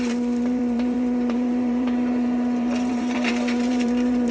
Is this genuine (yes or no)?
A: no